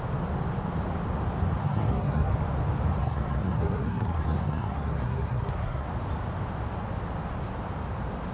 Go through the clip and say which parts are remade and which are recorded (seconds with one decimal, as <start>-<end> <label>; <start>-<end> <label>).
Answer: 0.0-1.6 recorded; 1.6-2.3 remade; 2.3-3.0 recorded; 3.0-5.9 remade; 5.9-8.3 recorded